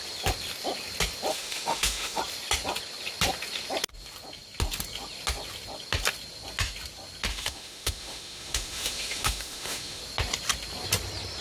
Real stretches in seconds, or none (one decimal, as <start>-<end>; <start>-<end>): 0.0-1.3; 2.2-7.3; 10.0-11.4